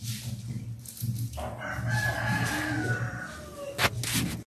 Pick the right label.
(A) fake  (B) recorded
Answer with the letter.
B